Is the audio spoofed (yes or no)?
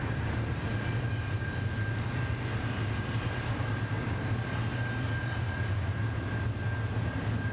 no